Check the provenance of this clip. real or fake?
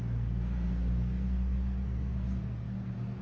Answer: fake